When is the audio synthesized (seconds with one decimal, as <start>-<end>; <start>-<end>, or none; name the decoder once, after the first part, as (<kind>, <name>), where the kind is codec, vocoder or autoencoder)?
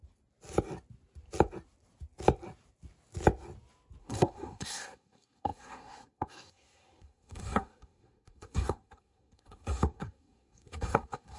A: 4.0-11.4 (codec, SNAC)